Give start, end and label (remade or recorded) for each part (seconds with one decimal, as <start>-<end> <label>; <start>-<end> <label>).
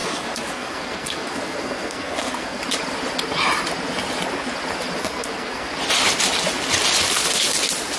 0.0-2.6 remade; 2.6-5.0 recorded; 5.0-5.7 remade; 5.7-8.0 recorded